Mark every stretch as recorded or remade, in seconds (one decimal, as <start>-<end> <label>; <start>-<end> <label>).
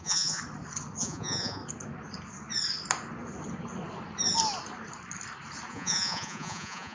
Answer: 0.0-0.4 remade; 0.4-1.0 recorded; 1.0-1.6 remade; 1.6-5.7 recorded; 5.7-6.9 remade